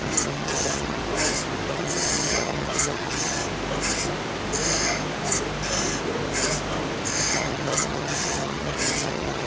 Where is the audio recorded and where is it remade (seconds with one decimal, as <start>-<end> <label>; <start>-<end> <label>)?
0.0-1.0 remade; 1.0-1.7 recorded; 1.7-3.4 remade; 3.4-7.3 recorded; 7.3-9.5 remade